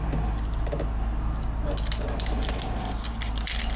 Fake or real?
real